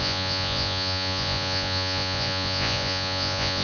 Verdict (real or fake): fake